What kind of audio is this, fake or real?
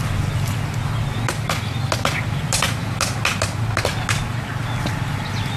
real